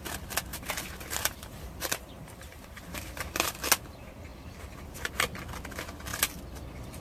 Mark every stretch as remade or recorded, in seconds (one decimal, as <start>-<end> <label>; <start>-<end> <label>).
0.0-0.5 recorded; 0.5-3.5 remade; 3.5-4.3 recorded; 4.3-5.1 remade; 5.1-7.0 recorded